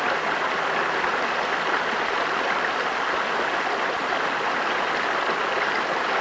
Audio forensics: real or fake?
real